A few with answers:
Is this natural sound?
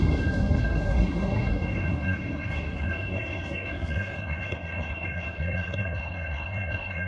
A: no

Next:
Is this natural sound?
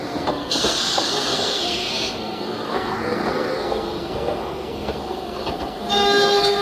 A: no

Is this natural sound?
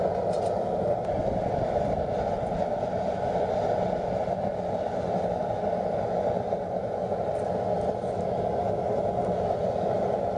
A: yes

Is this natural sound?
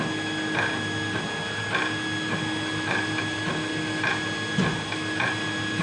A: yes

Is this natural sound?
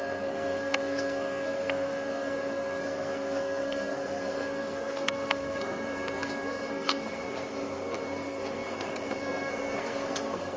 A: no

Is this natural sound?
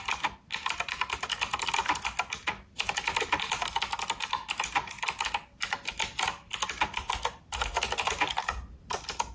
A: yes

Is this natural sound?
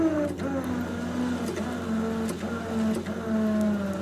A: yes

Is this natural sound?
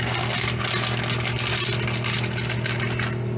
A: yes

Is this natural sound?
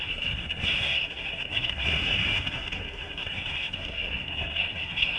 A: no